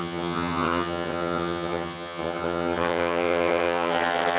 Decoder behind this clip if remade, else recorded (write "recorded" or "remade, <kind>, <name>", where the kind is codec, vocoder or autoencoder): remade, vocoder, HiFi-GAN